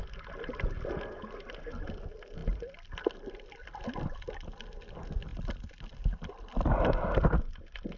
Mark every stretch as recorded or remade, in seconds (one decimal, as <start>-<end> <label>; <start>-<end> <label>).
0.0-8.0 recorded